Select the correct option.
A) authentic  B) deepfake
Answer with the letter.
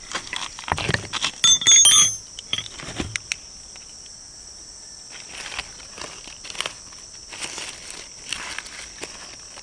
A